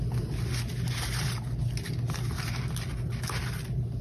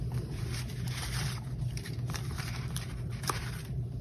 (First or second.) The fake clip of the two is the second